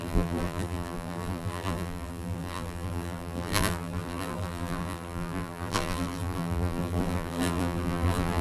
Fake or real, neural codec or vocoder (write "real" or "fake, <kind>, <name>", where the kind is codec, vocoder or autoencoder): fake, vocoder, BigVGAN v2